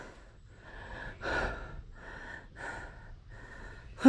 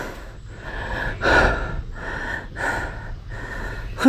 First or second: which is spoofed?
first